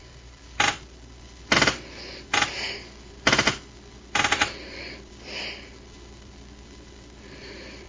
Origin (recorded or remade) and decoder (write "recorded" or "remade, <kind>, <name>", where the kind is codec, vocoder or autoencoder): remade, vocoder, BigVGAN v2